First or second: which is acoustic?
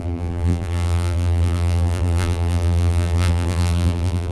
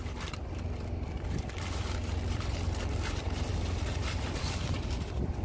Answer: second